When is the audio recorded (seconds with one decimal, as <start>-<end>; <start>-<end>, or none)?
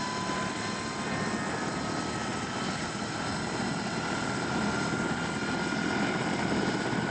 0.0-7.1